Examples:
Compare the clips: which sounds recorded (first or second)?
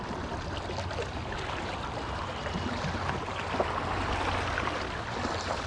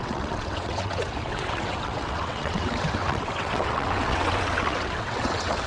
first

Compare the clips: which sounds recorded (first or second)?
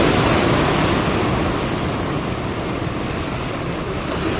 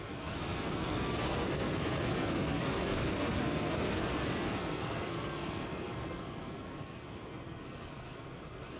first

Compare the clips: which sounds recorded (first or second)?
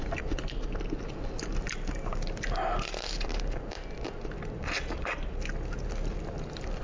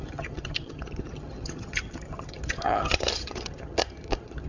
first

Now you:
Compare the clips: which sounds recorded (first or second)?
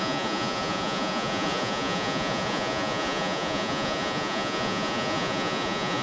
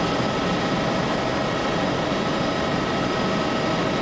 second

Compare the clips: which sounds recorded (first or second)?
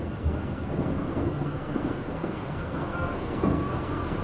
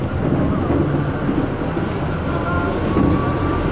second